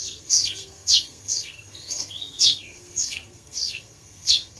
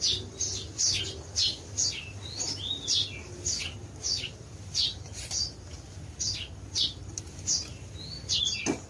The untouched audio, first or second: second